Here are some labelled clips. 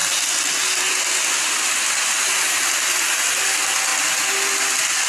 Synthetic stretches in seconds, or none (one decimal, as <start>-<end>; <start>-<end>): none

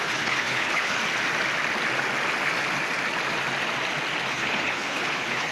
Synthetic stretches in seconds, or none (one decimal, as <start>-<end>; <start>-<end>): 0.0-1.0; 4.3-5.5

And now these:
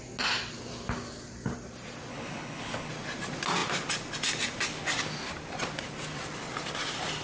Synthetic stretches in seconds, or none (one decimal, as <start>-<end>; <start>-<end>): 2.1-2.9

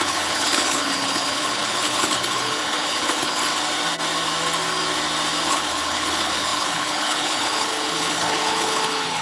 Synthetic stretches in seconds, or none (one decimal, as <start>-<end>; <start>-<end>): 0.0-3.5; 5.5-9.2

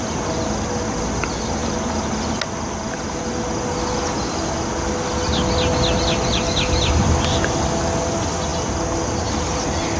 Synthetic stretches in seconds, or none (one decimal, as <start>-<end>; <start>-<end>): none

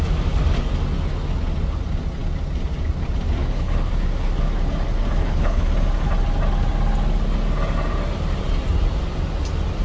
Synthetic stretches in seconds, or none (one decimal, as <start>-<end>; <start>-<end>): 3.4-3.9; 5.2-5.7

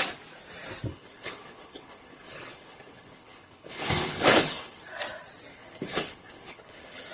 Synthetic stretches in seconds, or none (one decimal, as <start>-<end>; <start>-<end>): 0.9-4.8; 5.5-7.1